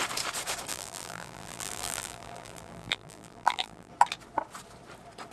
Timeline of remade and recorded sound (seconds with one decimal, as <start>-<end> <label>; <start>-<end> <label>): 0.0-0.7 recorded; 0.7-3.9 remade; 3.9-5.3 recorded